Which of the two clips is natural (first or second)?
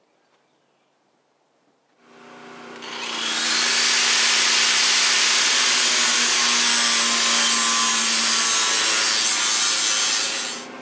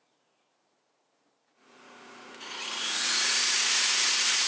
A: first